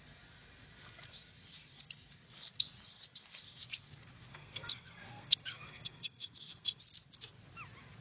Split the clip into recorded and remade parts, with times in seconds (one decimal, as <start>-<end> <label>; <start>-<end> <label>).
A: 0.0-4.3 recorded; 4.3-6.8 remade; 6.8-8.0 recorded